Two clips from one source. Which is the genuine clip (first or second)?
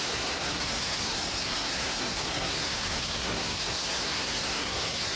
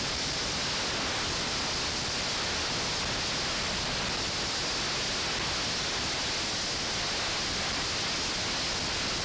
second